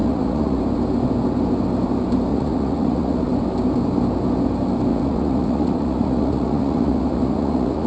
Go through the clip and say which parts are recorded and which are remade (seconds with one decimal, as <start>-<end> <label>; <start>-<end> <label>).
0.0-0.6 remade; 0.6-2.3 recorded; 2.3-3.3 remade; 3.3-4.9 recorded; 4.9-7.9 remade